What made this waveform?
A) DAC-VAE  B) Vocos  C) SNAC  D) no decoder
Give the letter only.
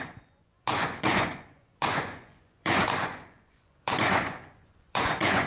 B